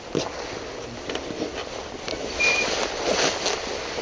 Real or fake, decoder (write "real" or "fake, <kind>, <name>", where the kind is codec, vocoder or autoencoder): real